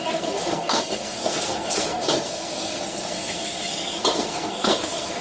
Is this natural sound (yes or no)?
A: no